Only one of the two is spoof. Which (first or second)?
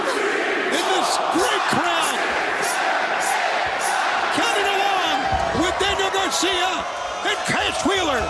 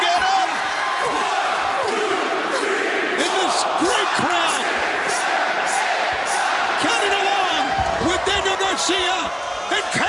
second